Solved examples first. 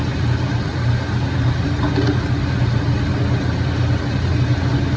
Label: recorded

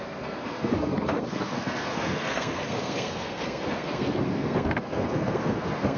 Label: remade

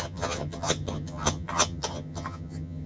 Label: remade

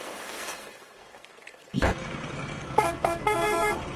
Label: remade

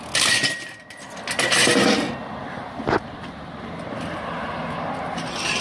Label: recorded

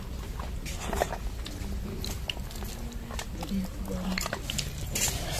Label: recorded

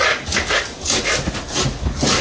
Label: recorded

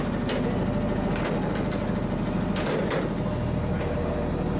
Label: recorded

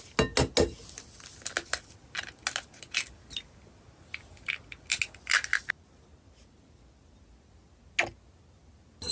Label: recorded